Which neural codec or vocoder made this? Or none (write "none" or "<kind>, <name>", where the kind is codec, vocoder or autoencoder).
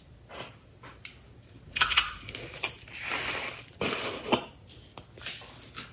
none